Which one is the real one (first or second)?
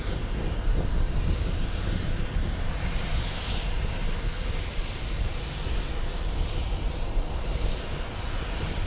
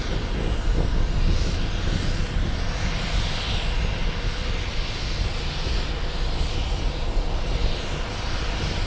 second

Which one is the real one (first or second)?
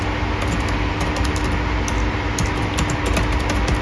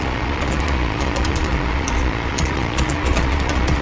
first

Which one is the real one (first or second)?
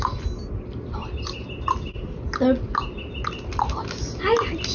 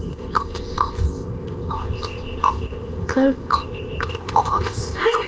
first